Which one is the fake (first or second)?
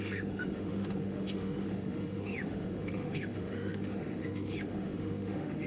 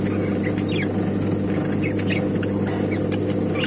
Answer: first